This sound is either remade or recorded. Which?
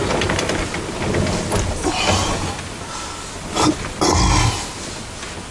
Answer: recorded